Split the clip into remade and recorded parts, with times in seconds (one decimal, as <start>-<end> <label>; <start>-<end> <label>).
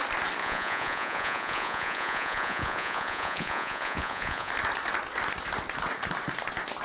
0.0-0.4 recorded; 0.4-4.5 remade; 4.5-6.8 recorded